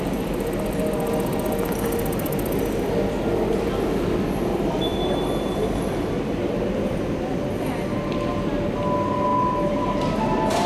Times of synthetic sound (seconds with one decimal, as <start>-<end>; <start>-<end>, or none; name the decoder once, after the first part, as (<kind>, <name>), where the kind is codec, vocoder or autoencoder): none